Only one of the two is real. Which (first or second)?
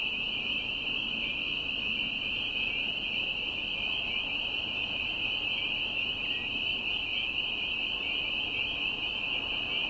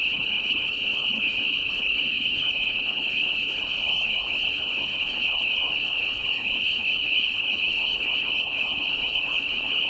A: first